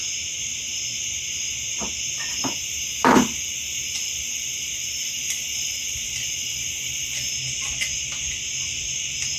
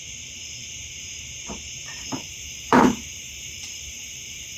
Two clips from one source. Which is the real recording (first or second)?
first